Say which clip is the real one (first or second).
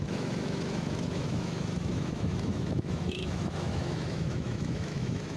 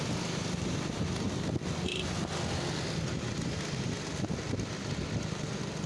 second